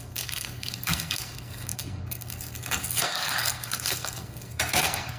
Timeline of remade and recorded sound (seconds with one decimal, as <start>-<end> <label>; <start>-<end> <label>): 0.0-5.2 remade